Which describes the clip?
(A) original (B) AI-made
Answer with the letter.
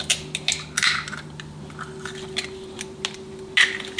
A